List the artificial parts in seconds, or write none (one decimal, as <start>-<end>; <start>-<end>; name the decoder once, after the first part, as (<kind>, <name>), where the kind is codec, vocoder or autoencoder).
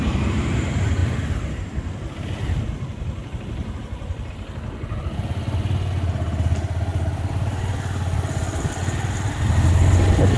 none